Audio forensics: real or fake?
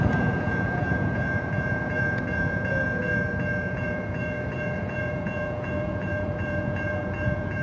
fake